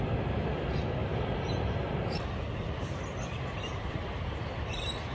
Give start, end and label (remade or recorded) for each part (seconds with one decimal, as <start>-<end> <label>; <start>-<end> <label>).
0.0-1.0 recorded; 1.0-4.1 remade; 4.1-5.1 recorded